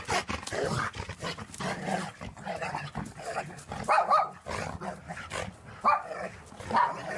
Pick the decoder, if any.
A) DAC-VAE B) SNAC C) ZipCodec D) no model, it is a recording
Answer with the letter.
D